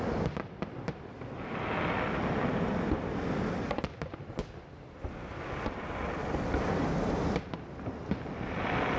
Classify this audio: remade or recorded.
recorded